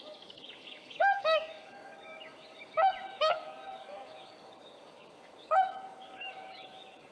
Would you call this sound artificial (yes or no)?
yes